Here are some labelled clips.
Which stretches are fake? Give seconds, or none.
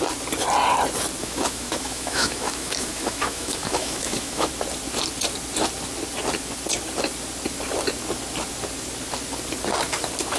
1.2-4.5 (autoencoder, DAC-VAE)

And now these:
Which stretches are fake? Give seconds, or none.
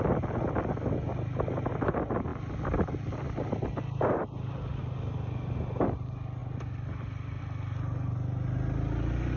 none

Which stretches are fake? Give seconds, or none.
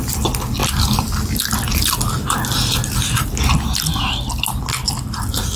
none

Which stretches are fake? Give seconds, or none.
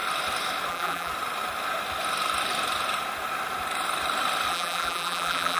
0.7-1.1 (vocoder, BigVGAN v2); 4.5-5.6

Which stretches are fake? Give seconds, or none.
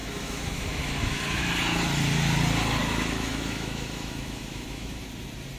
0.0-1.5 (autoencoder, DAC-VAE); 2.8-5.0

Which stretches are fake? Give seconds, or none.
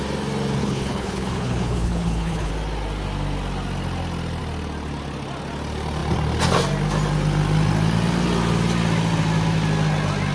0.6-2.5 (codec, HILCodec)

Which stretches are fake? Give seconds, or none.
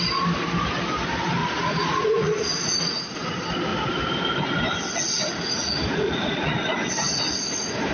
1.4-3.0 (vocoder, Vocos); 5.6-6.6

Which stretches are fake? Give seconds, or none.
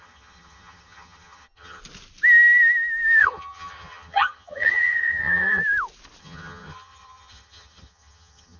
0.0-1.8 (vocoder, HiFi-GAN); 3.2-5.6; 6.2-8.6